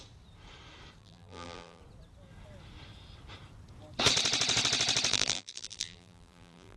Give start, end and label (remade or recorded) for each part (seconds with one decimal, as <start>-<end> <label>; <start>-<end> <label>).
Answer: 0.0-1.0 recorded; 1.0-1.8 remade; 1.8-5.1 recorded; 5.1-6.8 remade